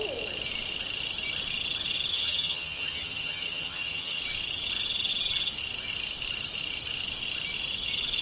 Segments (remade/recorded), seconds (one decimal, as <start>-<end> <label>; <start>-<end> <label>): 0.0-2.1 recorded; 2.1-4.2 remade; 4.2-8.2 recorded

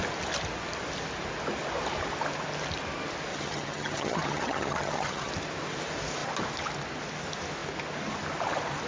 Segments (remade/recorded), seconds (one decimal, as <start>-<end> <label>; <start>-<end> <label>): 0.0-3.3 recorded; 3.3-5.3 remade; 5.3-8.9 recorded